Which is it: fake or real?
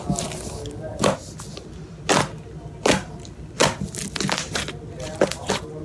real